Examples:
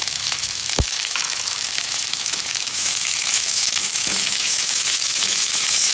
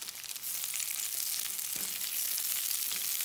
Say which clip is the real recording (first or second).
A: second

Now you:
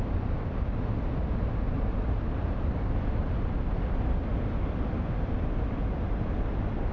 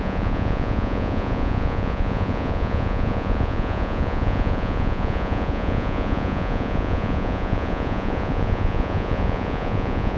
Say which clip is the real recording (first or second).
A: first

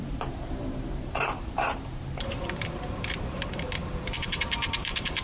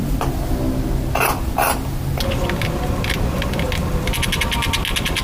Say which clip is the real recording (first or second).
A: second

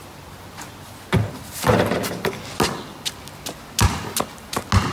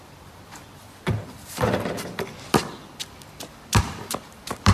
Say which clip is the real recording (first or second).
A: first